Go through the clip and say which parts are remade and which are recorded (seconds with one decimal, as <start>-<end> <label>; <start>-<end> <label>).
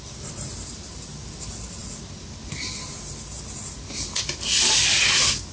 0.0-5.5 recorded